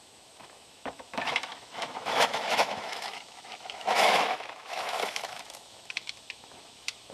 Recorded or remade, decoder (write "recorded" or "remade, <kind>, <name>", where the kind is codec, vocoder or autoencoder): remade, autoencoder, DAC-VAE